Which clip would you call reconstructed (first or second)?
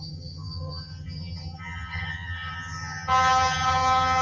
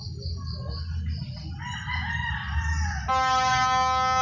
first